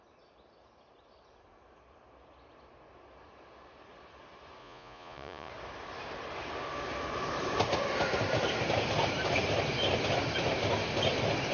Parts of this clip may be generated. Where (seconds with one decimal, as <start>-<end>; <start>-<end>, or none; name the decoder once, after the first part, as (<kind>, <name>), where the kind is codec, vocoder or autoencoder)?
4.6-5.5 (vocoder, Vocos)